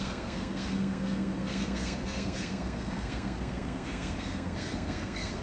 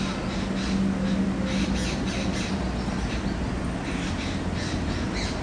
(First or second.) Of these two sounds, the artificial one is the first